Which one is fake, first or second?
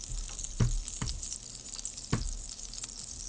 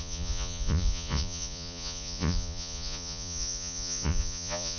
second